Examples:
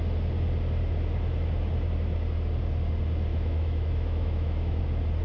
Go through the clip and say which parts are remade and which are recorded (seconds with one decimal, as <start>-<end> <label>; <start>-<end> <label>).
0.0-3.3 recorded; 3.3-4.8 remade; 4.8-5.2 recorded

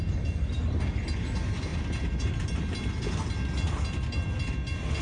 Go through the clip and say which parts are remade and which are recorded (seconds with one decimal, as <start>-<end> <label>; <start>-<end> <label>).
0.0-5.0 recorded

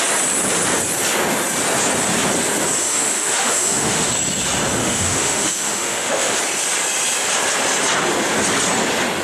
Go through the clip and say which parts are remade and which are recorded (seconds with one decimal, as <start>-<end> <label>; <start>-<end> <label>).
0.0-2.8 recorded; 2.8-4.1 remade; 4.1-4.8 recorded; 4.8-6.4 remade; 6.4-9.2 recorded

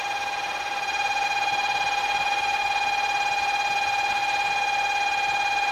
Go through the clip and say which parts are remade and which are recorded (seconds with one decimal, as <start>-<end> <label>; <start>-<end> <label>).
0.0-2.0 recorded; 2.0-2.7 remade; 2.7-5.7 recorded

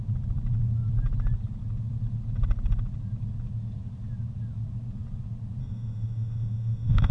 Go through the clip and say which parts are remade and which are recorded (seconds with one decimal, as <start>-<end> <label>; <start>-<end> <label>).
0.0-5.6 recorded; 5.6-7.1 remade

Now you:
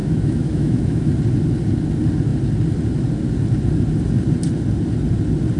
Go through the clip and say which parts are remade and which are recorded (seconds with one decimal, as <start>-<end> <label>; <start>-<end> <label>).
0.0-1.1 remade; 1.1-5.6 recorded

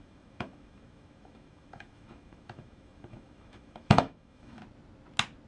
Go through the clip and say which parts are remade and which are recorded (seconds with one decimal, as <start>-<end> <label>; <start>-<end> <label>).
0.0-4.6 remade; 4.6-5.5 recorded